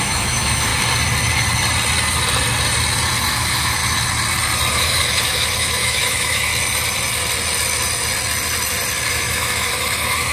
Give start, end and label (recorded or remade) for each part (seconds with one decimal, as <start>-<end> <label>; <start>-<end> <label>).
0.0-0.7 remade; 0.7-3.3 recorded; 3.3-3.8 remade; 3.8-4.7 recorded; 4.7-6.5 remade; 6.5-9.1 recorded; 9.1-10.3 remade